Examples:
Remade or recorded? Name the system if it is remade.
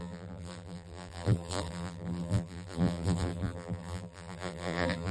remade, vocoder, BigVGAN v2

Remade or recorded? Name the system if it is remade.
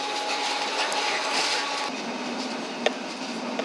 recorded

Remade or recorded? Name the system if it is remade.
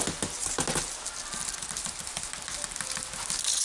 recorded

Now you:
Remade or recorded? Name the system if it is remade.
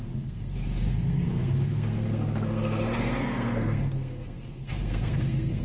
remade, codec, SNAC